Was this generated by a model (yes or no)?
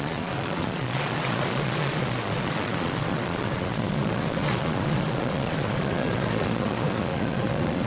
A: yes